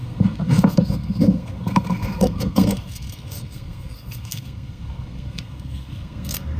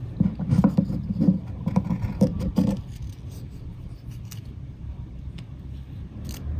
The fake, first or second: first